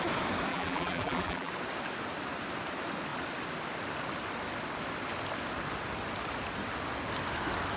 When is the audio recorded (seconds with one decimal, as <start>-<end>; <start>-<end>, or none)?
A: 0.0-0.5; 1.5-7.8